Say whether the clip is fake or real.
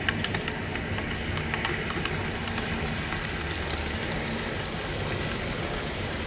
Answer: real